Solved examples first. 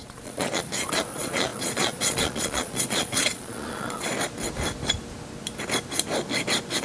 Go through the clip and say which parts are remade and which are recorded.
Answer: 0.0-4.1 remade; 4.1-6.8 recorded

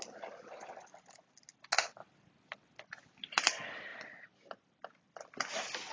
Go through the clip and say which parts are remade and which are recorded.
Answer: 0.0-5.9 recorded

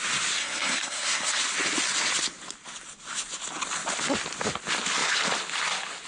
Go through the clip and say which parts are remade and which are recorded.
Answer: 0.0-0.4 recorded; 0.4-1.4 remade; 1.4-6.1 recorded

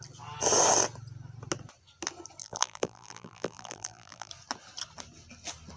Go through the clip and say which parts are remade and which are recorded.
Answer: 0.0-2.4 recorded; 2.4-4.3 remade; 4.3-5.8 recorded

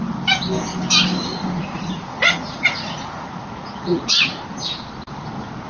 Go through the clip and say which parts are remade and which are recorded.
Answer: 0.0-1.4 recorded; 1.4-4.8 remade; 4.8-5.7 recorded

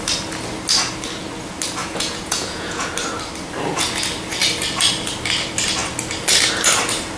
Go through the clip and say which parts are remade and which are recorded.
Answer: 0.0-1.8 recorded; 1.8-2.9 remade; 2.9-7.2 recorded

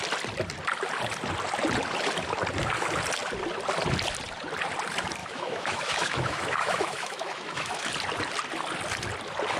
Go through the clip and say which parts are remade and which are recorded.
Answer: 0.0-5.2 recorded; 5.2-7.9 remade; 7.9-9.6 recorded